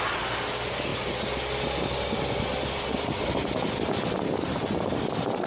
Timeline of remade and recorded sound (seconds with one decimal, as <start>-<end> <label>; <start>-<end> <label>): 0.0-5.5 recorded

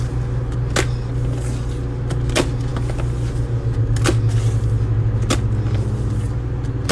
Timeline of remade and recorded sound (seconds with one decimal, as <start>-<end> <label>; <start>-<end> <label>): 0.0-6.9 recorded